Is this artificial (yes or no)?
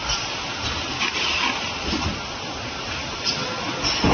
no